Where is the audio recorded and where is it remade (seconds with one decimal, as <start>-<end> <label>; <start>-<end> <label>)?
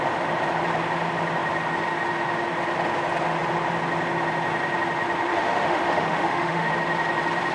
0.0-5.3 recorded; 5.3-6.7 remade; 6.7-7.5 recorded